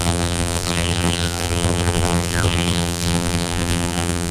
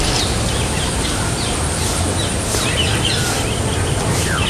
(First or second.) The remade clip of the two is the first